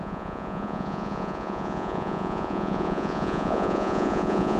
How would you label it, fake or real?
fake